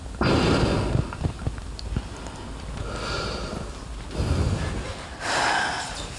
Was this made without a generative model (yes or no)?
yes